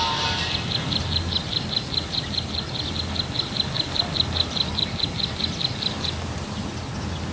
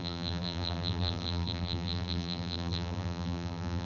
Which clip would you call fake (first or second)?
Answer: second